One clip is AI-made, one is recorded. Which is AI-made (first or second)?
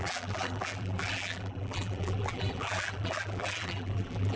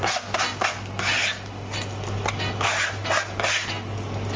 first